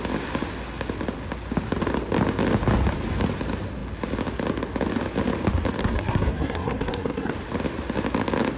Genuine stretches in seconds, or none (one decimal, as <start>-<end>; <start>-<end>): 0.0-5.8; 7.3-8.6